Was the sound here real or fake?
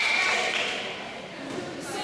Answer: fake